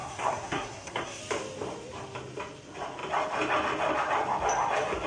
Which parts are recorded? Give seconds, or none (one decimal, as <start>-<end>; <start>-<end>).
1.2-5.1